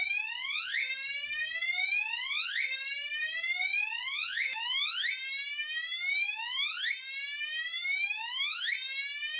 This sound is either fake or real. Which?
real